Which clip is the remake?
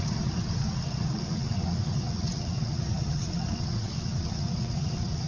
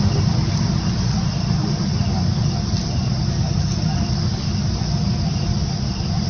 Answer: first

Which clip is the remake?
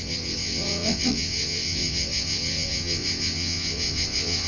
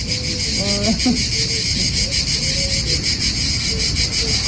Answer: first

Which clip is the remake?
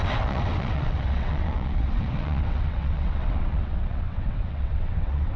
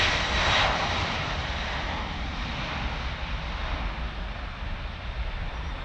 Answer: first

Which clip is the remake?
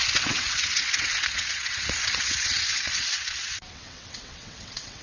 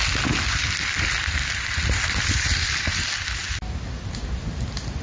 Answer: first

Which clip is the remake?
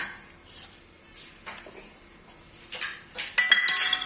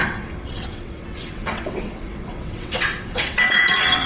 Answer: second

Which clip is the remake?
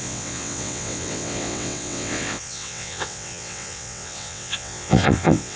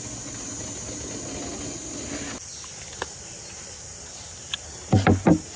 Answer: first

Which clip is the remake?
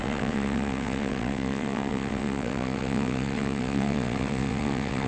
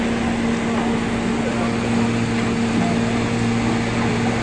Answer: first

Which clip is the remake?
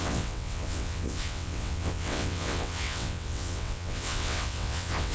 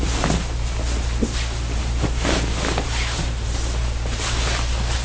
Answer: first